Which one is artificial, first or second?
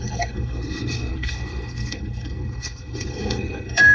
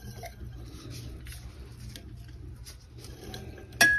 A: first